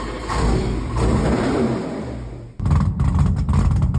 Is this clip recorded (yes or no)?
yes